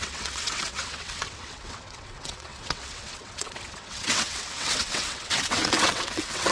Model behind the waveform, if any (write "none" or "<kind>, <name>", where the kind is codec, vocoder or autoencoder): vocoder, WaveNeXt